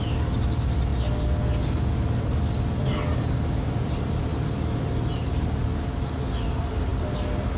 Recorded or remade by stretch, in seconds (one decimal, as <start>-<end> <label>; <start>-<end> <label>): 0.0-7.6 recorded

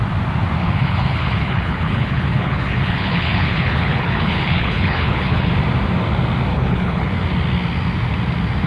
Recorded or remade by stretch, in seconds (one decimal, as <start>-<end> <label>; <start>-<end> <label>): 0.0-0.6 recorded; 0.6-5.5 remade; 5.5-6.5 recorded; 6.5-7.1 remade; 7.1-8.7 recorded

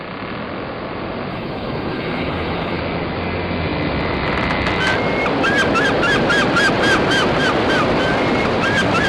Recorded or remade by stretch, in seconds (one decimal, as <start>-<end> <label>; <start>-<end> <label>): 0.0-1.3 recorded; 1.3-2.8 remade; 2.8-9.1 recorded